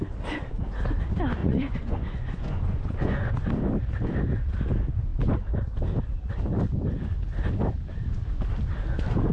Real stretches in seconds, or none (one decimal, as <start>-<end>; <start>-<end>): 0.0-1.4; 3.3-9.3